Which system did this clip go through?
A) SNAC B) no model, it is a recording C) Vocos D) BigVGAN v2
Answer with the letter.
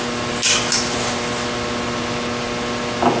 B